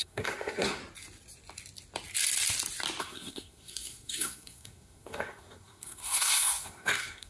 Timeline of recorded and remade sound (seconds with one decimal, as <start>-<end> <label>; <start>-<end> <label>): 0.0-0.8 remade; 0.8-3.0 recorded; 3.0-7.3 remade